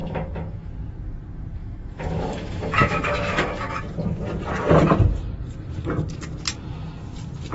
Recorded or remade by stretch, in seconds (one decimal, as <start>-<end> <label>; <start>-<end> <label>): 0.0-0.7 remade; 0.7-1.6 recorded; 1.6-3.8 remade; 3.8-7.5 recorded